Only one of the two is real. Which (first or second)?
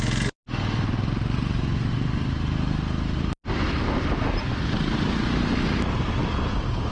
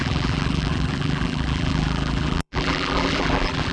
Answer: first